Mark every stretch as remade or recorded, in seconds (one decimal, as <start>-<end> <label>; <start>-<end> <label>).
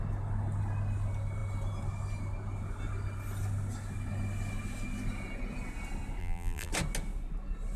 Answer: 0.0-6.2 recorded; 6.2-6.7 remade; 6.7-7.8 recorded